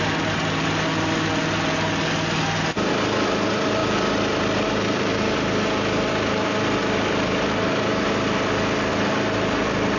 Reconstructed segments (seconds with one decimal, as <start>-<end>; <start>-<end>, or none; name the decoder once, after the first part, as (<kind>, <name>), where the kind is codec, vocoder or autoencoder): none